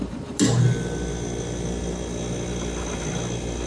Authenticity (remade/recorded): recorded